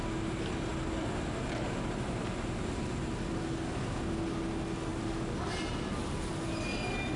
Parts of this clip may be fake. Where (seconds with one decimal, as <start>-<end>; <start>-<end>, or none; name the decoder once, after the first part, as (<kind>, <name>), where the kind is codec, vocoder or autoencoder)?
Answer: none